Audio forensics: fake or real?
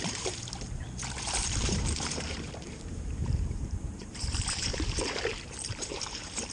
fake